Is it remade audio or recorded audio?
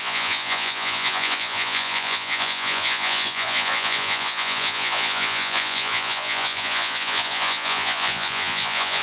remade